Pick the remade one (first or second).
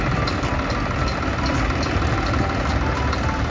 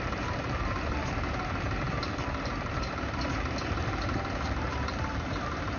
second